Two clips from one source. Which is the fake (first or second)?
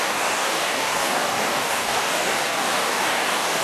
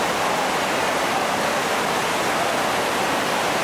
first